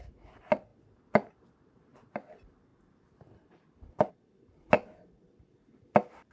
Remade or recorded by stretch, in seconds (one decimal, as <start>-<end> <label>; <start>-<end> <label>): 0.0-6.3 recorded